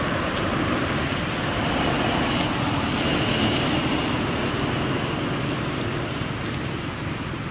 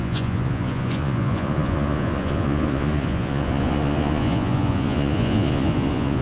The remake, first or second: second